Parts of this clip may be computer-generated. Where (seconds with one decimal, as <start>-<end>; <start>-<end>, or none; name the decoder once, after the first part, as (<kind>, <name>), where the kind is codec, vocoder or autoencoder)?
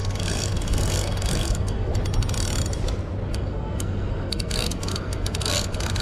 0.0-1.9 (codec, SNAC); 3.3-6.0